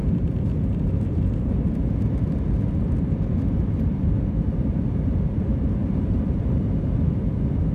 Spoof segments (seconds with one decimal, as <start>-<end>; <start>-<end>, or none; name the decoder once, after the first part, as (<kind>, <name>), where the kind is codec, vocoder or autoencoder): 3.6-4.8 (vocoder, BigVGAN v2); 5.8-6.4

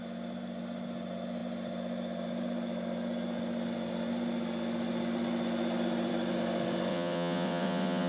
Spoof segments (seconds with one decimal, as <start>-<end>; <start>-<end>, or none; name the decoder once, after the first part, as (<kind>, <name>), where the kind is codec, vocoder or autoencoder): 6.9-8.1 (vocoder, WaveNeXt)

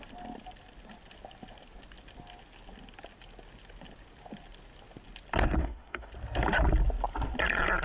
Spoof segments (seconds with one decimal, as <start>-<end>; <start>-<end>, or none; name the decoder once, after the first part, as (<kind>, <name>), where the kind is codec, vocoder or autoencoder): 5.6-6.1 (autoencoder, DAC-VAE)

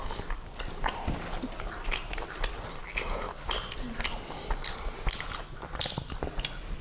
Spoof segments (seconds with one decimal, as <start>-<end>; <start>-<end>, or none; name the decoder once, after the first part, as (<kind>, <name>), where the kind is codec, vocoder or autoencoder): none

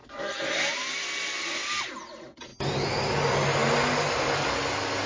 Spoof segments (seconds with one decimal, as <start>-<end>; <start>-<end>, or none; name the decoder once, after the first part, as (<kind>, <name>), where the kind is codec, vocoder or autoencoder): none